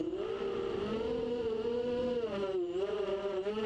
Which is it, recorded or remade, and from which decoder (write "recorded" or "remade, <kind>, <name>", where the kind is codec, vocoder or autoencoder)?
recorded